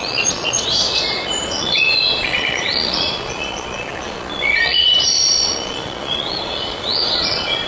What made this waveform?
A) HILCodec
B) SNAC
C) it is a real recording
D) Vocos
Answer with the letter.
D